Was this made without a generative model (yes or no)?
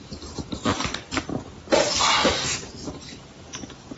yes